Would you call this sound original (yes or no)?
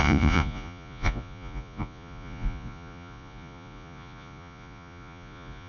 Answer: no